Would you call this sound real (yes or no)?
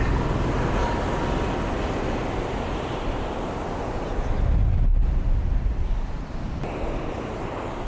yes